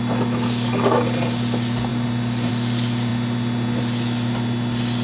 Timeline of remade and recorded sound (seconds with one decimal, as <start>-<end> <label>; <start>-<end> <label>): 0.0-5.0 recorded